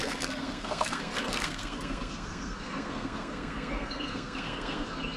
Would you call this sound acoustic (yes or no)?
no